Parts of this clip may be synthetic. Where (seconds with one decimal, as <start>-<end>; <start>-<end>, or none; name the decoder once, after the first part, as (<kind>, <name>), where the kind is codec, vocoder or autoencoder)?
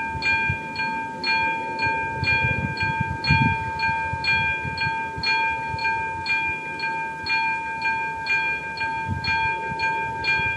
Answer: none